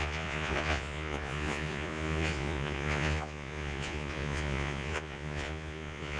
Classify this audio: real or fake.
fake